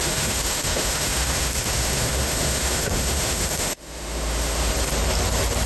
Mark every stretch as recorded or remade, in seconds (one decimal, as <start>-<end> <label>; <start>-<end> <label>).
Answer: 0.0-4.7 remade; 4.7-5.7 recorded